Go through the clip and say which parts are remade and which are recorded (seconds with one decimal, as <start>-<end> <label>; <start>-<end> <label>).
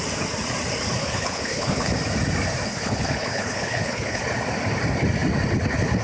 0.0-1.0 recorded; 1.0-1.9 remade; 1.9-2.7 recorded; 2.7-4.2 remade; 4.2-6.0 recorded